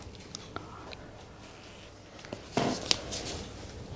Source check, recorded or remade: recorded